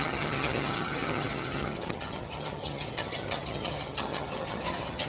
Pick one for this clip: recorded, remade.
remade